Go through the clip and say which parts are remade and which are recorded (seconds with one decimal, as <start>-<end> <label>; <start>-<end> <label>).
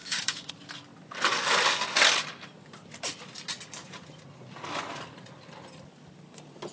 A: 0.0-0.5 remade; 0.5-6.7 recorded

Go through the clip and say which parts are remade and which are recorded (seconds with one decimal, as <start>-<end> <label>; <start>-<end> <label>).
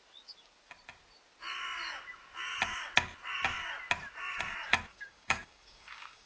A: 0.0-4.9 recorded; 4.9-6.3 remade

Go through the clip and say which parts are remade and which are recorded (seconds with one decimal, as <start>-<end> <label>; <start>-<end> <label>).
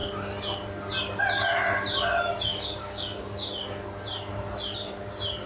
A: 0.0-2.5 recorded; 2.5-3.5 remade; 3.5-5.5 recorded